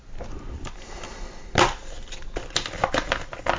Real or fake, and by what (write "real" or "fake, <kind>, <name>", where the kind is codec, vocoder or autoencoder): real